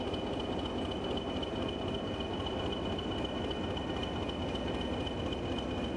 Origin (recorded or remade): recorded